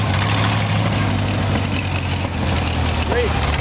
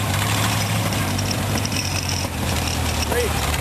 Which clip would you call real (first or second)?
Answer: first